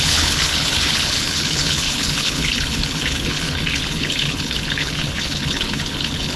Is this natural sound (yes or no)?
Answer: no